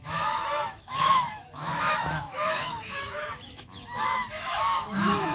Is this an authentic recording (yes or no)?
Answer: no